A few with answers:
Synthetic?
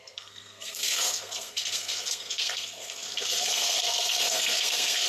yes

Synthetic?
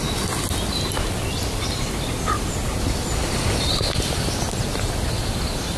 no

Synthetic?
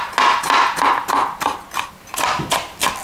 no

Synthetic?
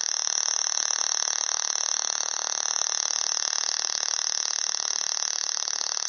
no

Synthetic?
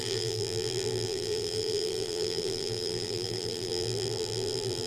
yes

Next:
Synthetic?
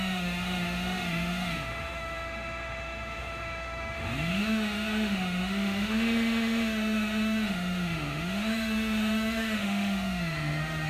yes